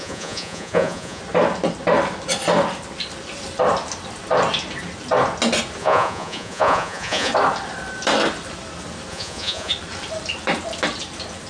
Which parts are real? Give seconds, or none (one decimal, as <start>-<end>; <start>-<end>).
1.2-5.8; 7.3-9.1; 9.7-11.5